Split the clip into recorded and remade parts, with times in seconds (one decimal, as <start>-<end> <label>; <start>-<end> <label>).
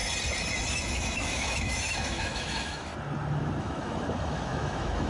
0.0-0.7 recorded; 0.7-2.9 remade; 2.9-3.6 recorded; 3.6-5.1 remade